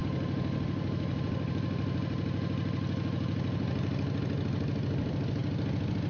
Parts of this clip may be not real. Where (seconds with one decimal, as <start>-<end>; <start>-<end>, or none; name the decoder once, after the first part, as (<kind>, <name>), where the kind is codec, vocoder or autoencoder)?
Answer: none